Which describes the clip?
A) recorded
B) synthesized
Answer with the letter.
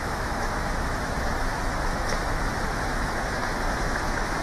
B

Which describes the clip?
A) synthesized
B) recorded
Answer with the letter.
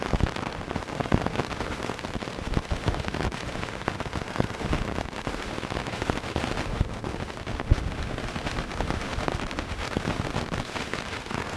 A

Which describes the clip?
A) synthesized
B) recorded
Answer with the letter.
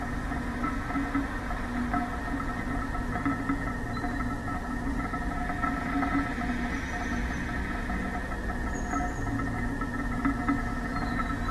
B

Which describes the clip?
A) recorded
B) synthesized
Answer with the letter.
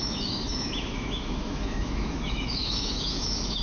B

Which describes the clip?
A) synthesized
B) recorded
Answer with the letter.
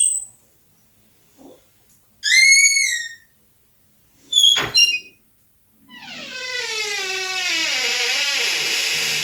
B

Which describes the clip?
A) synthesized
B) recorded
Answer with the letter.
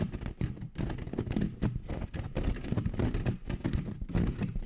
B